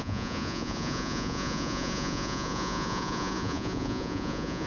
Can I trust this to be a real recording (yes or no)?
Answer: no